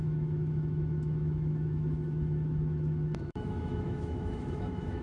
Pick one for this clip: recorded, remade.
remade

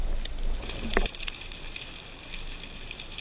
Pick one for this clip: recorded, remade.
recorded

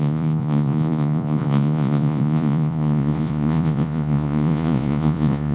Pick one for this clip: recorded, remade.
remade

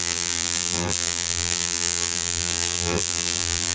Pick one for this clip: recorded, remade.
remade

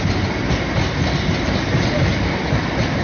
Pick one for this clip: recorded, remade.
recorded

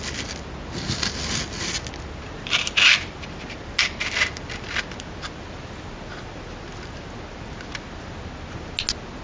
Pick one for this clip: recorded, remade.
recorded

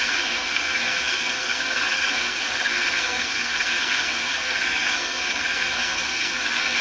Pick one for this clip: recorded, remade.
remade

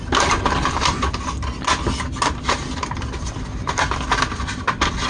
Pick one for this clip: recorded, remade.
recorded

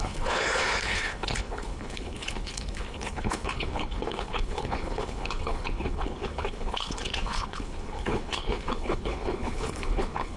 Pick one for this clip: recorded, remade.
remade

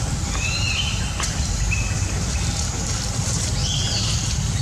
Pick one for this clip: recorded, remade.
recorded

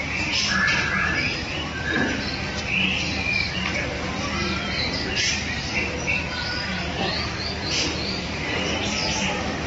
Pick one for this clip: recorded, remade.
remade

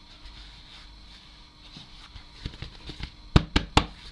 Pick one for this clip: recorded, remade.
recorded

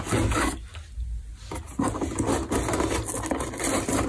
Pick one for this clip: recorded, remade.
recorded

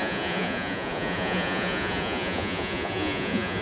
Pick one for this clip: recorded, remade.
remade